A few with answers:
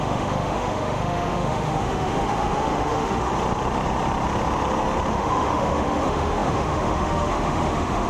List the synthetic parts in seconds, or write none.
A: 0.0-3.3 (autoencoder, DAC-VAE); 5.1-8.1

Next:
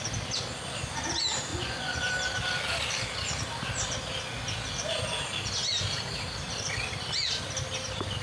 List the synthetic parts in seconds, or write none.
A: 1.5-2.1 (vocoder, Vocos)

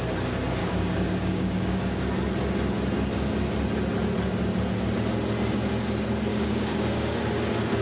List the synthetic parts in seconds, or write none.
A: 0.6-2.0 (codec, DAC); 6.3-7.2

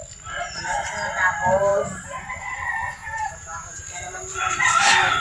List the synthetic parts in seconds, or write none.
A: 3.0-3.8 (vocoder, Vocos)

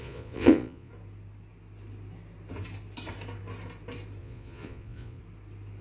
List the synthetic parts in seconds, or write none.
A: 0.0-0.9 (vocoder, Vocos); 4.2-5.2